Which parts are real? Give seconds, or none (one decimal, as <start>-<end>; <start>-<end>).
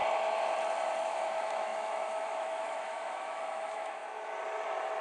0.0-1.0; 4.0-5.0